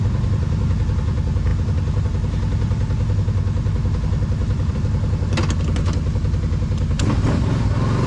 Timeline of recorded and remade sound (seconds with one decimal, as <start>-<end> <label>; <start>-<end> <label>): 0.0-8.1 recorded